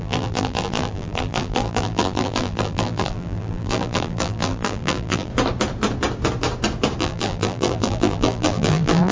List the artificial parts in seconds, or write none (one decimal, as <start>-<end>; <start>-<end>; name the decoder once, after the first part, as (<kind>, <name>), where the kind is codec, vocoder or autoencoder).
0.0-5.3 (vocoder, BigVGAN v2); 7.0-9.1